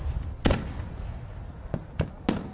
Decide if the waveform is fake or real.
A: real